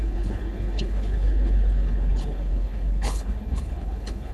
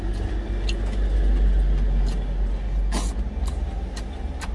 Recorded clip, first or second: second